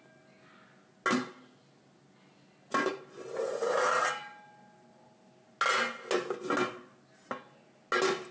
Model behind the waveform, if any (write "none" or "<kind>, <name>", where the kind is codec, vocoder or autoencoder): none